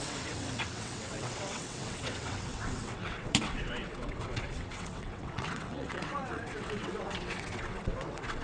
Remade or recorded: remade